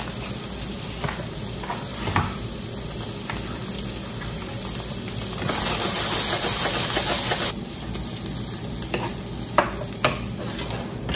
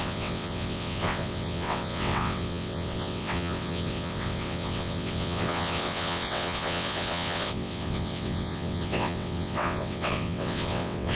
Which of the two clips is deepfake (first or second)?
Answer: second